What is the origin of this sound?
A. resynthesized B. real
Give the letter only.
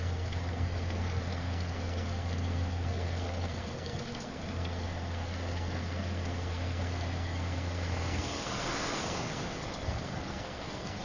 A